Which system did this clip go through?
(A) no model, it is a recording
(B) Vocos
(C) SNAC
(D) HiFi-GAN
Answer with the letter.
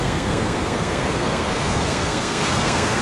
C